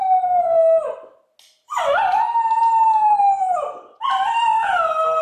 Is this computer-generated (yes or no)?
no